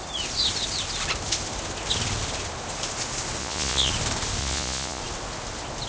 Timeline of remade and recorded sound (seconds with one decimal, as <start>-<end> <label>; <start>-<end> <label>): 0.0-3.4 recorded; 3.4-3.9 remade; 3.9-4.4 recorded; 4.4-5.0 remade; 5.0-5.9 recorded